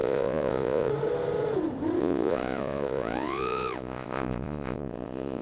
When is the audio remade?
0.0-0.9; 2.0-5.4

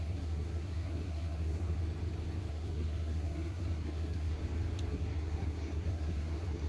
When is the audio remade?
0.0-1.8; 2.5-4.4; 4.9-6.7